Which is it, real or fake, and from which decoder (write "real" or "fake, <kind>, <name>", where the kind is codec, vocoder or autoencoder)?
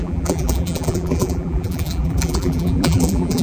fake, vocoder, BigVGAN v2